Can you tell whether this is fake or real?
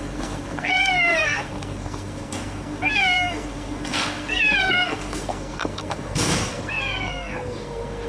fake